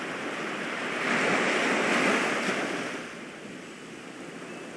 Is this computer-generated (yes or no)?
no